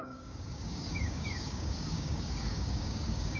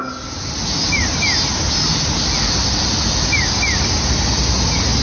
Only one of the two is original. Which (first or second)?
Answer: second